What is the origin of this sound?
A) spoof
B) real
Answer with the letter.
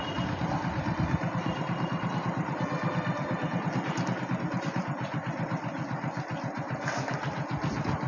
B